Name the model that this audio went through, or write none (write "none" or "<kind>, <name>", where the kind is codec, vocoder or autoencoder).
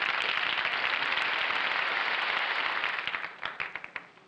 none